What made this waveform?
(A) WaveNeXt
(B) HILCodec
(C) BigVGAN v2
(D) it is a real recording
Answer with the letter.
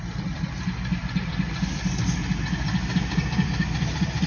D